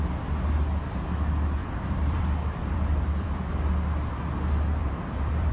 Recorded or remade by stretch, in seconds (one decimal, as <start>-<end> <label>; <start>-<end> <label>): 0.0-1.6 recorded; 1.6-3.7 remade; 3.7-4.8 recorded; 4.8-5.5 remade